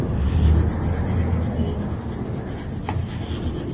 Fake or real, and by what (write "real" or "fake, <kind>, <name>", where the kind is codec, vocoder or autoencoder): real